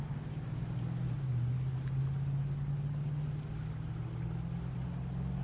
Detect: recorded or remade recorded